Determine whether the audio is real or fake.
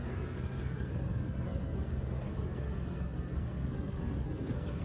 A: fake